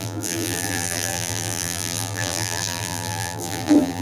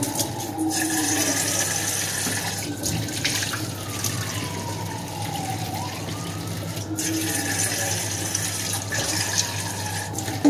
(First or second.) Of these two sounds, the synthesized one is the first